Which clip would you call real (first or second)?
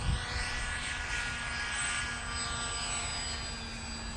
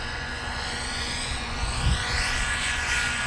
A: first